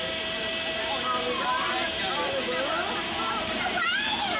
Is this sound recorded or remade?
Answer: recorded